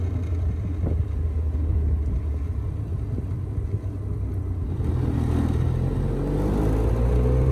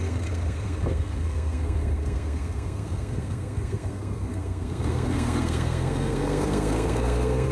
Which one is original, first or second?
first